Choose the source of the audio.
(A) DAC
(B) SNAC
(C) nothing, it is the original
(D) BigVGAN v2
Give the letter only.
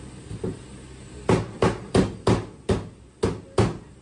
C